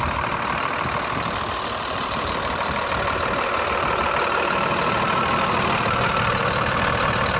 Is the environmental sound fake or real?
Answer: fake